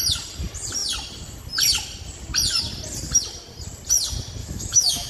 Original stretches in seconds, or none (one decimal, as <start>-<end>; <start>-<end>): 0.0-4.4